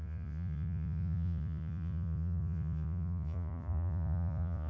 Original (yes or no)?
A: no